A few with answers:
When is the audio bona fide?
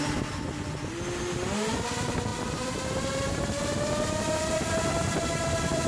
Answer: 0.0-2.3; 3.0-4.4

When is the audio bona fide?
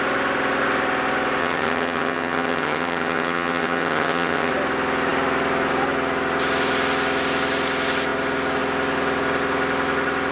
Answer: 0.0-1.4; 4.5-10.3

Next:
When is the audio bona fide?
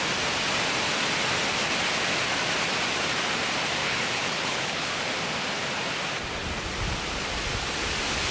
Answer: 0.0-3.8; 5.0-8.3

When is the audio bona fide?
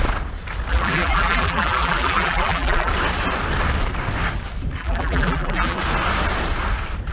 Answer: 0.0-0.7; 2.9-4.8; 5.8-7.1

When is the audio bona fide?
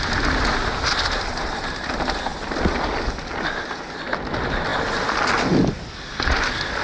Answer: 0.0-6.8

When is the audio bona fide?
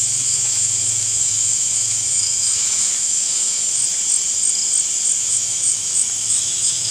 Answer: 3.8-5.2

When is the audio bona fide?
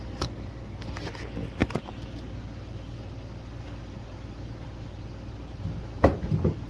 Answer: 0.0-6.7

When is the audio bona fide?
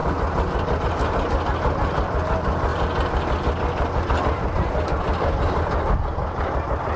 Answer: 0.0-0.8; 2.7-4.0